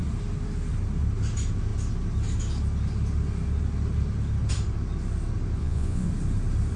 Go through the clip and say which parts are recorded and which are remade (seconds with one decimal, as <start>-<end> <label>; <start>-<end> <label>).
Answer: 0.0-5.6 recorded; 5.6-6.1 remade; 6.1-6.8 recorded